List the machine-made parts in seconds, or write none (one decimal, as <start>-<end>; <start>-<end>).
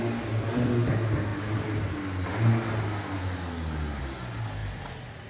none